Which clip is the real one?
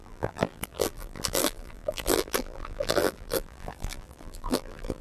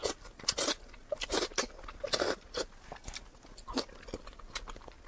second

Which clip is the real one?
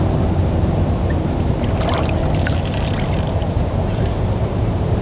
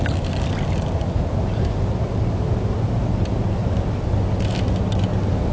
second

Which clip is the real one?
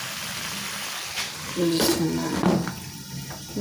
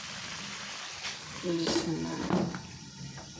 first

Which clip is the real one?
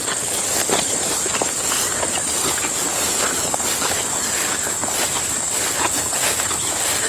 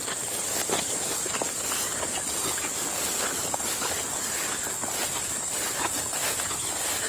first